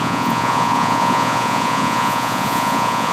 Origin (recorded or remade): remade